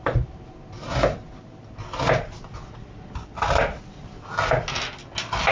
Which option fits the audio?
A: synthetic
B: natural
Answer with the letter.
B